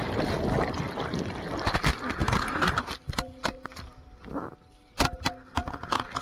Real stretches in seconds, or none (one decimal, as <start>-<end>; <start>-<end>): 0.0-2.2; 2.9-6.2